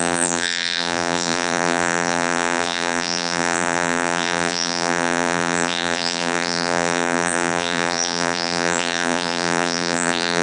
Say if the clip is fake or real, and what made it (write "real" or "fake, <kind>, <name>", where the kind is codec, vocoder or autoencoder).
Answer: fake, vocoder, BigVGAN v2